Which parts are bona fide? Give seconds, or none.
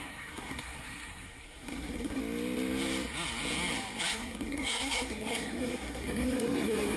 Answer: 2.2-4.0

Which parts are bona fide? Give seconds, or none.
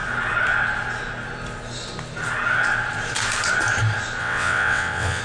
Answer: 0.0-4.2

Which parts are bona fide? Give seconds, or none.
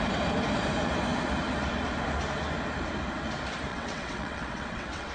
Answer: 0.0-3.7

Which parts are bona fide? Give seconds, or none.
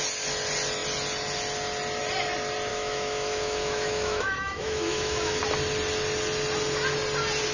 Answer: 0.0-2.7; 5.4-7.5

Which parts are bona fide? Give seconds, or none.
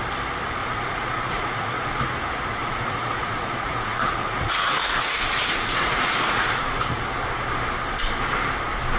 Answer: 0.0-0.6; 2.0-2.6; 6.8-9.0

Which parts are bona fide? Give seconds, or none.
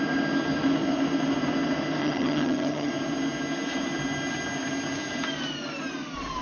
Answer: 0.0-2.0; 2.9-6.4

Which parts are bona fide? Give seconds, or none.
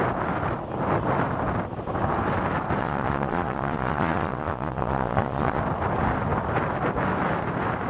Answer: 0.0-2.8; 5.6-7.9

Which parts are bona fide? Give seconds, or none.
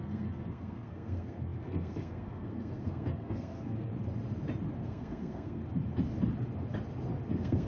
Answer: 3.9-4.8; 5.6-7.3